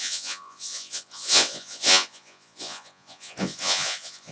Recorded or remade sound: remade